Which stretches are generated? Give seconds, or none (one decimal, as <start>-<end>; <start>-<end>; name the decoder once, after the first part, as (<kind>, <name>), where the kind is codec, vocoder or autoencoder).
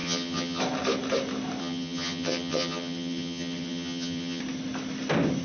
0.0-0.6 (vocoder, HiFi-GAN); 1.6-4.4